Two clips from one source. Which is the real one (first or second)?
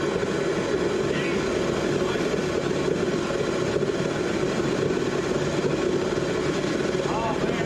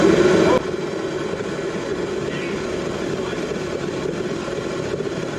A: first